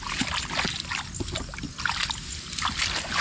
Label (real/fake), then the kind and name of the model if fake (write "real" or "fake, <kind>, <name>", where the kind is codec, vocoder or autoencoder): real